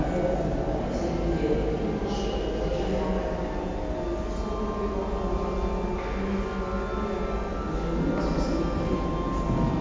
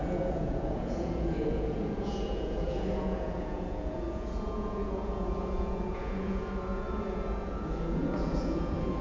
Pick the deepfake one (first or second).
second